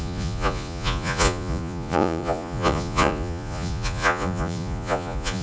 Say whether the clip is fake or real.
fake